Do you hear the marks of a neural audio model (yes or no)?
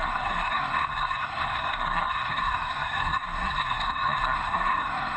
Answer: yes